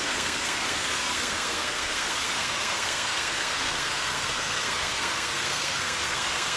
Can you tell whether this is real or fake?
fake